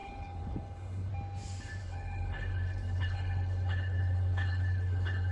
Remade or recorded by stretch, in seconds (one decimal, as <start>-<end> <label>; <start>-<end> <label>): 0.0-1.1 remade; 1.1-1.8 recorded; 1.8-5.3 remade